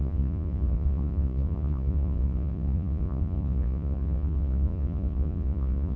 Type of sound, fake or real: fake